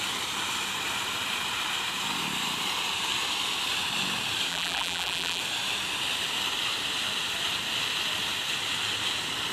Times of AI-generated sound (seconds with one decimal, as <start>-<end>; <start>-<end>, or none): 4.5-5.4